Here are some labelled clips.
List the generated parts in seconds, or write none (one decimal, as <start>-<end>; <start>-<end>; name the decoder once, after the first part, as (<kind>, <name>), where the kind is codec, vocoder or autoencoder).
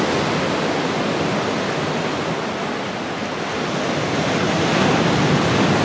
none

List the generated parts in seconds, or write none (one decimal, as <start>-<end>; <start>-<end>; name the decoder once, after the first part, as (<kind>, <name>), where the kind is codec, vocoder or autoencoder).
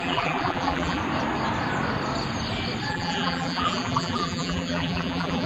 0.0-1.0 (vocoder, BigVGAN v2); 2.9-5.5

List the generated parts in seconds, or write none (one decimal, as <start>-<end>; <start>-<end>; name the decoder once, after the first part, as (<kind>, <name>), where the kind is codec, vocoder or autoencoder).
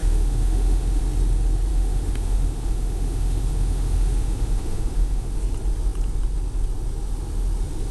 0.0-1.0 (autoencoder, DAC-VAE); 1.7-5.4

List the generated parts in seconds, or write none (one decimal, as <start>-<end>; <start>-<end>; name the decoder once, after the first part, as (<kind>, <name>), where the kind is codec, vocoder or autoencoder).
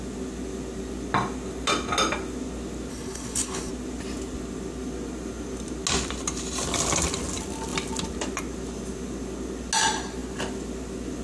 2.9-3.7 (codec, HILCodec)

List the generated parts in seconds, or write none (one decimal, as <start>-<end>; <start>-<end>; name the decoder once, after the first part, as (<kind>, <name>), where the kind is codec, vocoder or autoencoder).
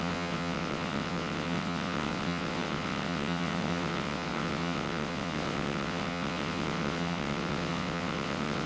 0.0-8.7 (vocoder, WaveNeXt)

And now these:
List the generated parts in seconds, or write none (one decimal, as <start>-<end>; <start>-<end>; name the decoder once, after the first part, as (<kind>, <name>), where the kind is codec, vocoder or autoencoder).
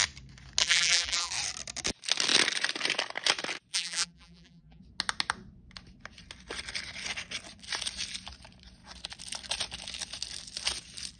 0.6-1.3 (vocoder, BigVGAN v2); 3.7-4.8